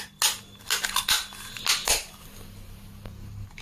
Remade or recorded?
recorded